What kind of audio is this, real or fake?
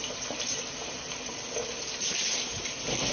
real